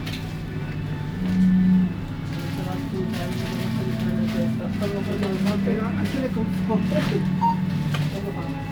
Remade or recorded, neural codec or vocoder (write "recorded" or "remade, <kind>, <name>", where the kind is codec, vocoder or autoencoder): recorded